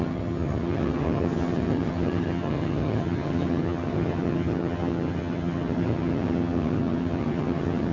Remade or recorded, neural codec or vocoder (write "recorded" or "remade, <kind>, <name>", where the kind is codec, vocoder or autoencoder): remade, vocoder, HiFi-GAN